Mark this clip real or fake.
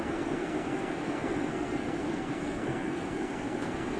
fake